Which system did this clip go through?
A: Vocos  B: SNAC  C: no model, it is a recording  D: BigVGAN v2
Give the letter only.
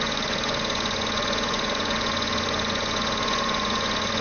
A